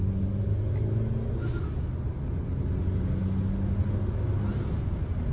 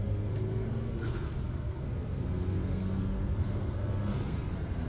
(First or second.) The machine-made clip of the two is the second